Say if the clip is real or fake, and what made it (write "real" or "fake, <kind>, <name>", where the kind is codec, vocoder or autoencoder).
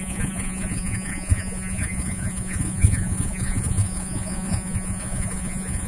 fake, vocoder, Vocos